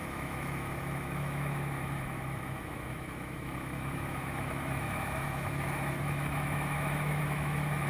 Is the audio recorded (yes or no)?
no